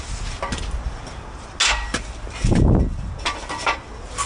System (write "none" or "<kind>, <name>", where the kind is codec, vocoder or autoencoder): none